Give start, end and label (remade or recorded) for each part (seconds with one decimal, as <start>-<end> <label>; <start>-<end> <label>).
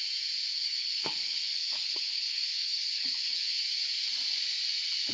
0.0-0.5 recorded; 0.5-3.6 remade; 3.6-5.1 recorded